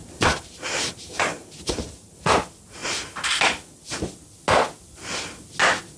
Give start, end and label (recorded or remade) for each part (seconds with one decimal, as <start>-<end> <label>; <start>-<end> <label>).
0.0-2.4 remade; 2.4-6.0 recorded